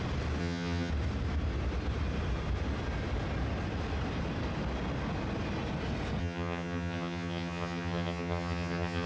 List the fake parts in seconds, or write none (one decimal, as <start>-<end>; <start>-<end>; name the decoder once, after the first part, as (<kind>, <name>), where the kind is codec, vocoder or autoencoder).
0.4-0.9 (vocoder, HiFi-GAN); 6.2-9.1